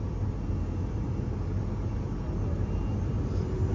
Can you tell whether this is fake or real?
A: real